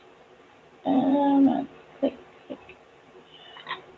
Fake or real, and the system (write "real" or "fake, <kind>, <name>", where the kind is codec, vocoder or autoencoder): real